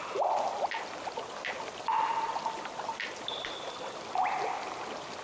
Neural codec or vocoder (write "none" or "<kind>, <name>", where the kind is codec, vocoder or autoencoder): none